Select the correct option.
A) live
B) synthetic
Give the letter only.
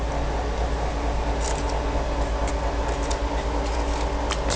A